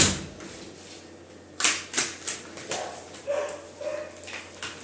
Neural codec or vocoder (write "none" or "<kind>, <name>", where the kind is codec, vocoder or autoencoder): none